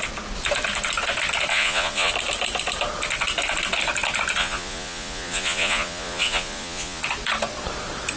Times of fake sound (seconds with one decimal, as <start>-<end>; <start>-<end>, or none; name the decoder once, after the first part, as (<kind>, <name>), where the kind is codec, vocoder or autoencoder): 1.5-2.1 (vocoder, Vocos); 4.4-7.0